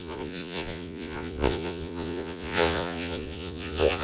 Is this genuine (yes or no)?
no